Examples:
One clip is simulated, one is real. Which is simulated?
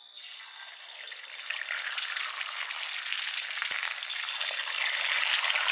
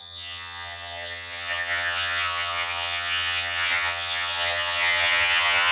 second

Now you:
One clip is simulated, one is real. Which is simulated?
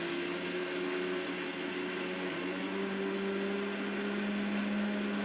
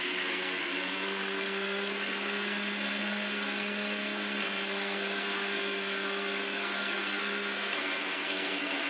second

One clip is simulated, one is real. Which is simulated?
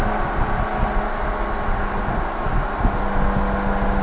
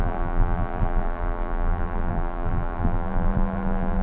second